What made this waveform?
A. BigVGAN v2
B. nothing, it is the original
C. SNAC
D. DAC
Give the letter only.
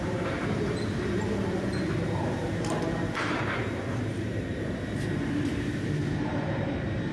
A